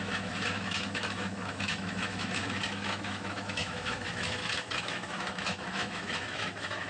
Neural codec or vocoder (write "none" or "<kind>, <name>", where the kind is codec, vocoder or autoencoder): autoencoder, DAC-VAE